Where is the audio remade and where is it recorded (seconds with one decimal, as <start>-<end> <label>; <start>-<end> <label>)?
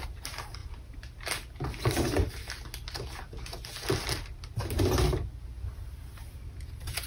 0.0-7.1 recorded